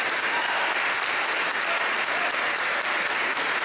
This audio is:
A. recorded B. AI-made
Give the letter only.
A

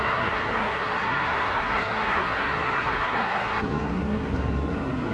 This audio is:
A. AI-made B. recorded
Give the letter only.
A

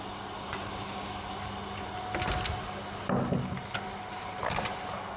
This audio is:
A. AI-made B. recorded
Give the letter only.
B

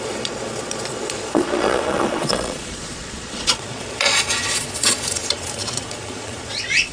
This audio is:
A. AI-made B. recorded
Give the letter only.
A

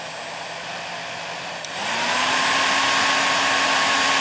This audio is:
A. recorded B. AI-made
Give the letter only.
A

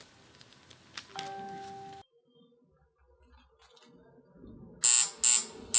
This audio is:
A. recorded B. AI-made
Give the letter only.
A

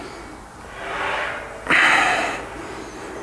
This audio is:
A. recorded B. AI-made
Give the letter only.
A